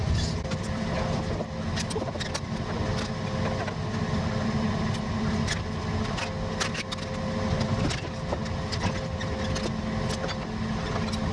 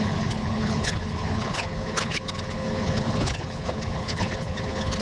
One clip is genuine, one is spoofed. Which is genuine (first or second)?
first